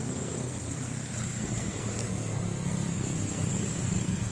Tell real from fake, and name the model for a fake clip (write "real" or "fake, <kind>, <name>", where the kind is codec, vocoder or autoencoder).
fake, codec, SNAC